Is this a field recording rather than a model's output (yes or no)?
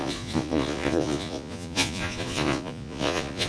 no